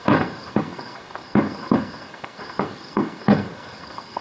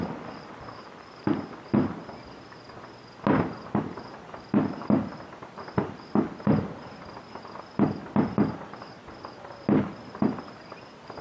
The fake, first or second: first